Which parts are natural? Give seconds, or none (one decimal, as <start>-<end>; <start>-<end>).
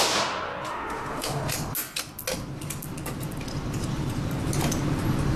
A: 0.0-0.7; 1.4-5.4